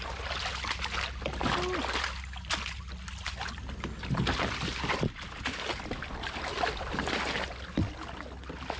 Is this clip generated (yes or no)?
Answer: no